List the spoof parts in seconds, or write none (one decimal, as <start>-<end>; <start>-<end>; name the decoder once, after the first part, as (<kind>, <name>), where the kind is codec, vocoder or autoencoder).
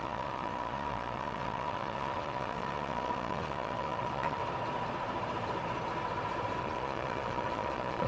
0.0-4.4 (vocoder, Vocos); 6.6-8.1